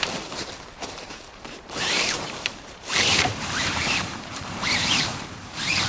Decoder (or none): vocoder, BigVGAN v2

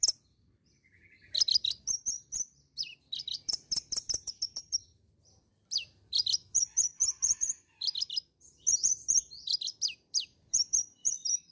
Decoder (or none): vocoder, BigVGAN v2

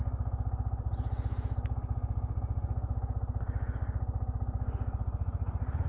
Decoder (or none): none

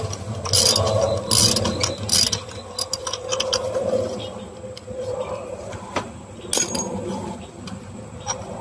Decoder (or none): none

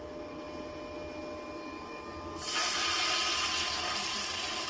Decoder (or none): none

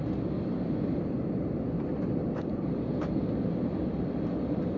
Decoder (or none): none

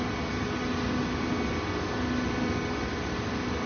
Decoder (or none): none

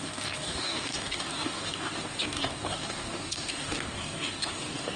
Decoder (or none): codec, DAC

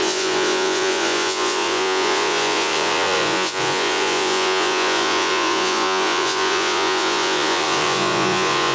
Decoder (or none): vocoder, Vocos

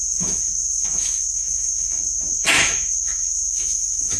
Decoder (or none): autoencoder, DAC-VAE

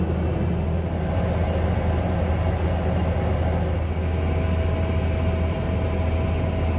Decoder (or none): none